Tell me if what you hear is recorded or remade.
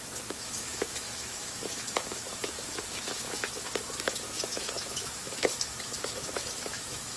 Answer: remade